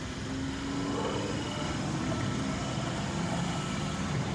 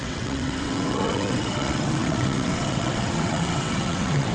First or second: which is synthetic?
second